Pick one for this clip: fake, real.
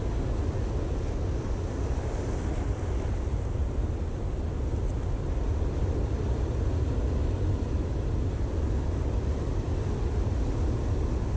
real